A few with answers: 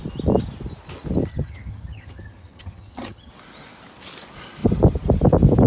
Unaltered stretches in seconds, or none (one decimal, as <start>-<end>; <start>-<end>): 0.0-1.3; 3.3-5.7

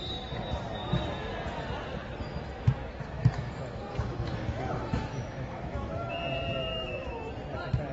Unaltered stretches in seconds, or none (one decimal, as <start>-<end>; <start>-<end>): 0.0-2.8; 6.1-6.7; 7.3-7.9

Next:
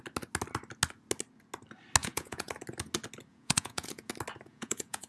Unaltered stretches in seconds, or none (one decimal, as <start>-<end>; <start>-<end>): 0.0-2.0; 2.5-3.3; 4.1-4.5